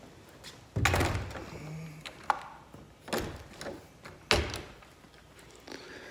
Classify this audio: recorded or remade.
recorded